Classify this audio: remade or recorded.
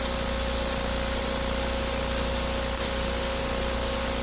recorded